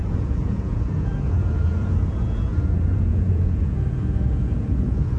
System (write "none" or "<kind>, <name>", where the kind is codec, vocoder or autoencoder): vocoder, Vocos